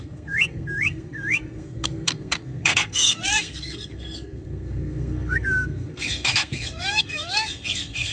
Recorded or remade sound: remade